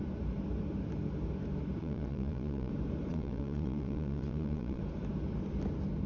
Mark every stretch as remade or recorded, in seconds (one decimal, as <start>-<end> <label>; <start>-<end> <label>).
0.0-1.8 recorded; 1.8-2.7 remade; 2.7-3.1 recorded; 3.1-4.8 remade; 4.8-6.1 recorded